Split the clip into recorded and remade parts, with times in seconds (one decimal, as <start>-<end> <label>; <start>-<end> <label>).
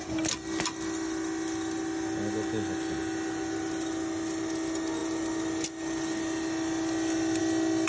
0.0-7.9 recorded